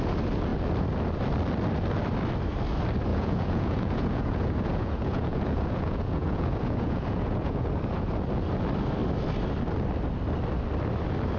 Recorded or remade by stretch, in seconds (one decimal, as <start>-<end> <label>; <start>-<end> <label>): 0.0-3.1 recorded; 3.1-7.7 remade; 7.7-11.4 recorded

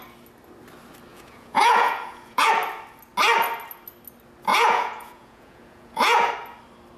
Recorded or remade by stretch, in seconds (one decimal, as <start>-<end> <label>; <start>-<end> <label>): 0.0-1.1 recorded; 1.1-2.5 remade; 2.5-4.5 recorded; 4.5-6.3 remade; 6.3-7.0 recorded

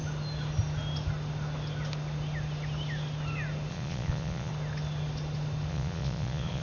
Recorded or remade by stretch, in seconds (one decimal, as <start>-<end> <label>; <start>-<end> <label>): 0.0-3.7 recorded; 3.7-4.5 remade; 4.5-5.7 recorded; 5.7-6.6 remade

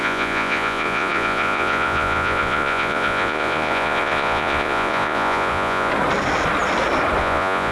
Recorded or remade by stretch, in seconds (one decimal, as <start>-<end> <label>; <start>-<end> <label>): 0.0-5.9 remade; 5.9-7.2 recorded; 7.2-7.7 remade

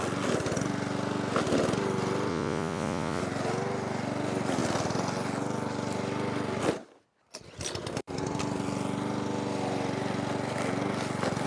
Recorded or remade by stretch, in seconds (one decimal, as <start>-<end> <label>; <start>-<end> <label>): 0.0-2.3 recorded; 2.3-3.2 remade; 3.2-11.5 recorded

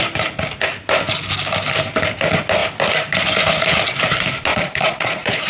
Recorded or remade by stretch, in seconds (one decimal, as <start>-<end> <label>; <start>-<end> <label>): 0.0-4.5 recorded; 4.5-5.5 remade